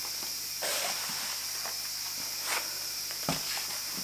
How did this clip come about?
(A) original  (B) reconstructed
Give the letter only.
A